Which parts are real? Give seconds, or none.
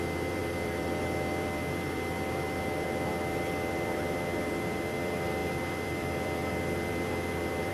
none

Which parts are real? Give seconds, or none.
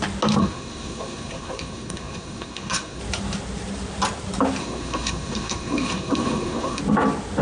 0.0-0.4; 3.0-4.6; 6.8-7.4